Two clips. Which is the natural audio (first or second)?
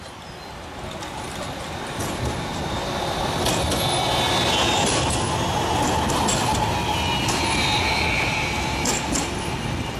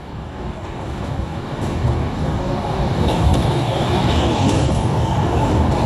first